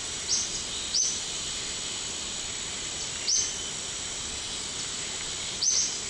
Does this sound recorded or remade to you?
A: recorded